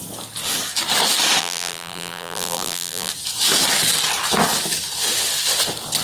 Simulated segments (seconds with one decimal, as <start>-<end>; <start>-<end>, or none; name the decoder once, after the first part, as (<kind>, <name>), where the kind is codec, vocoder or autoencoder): 1.4-3.1 (vocoder, BigVGAN v2)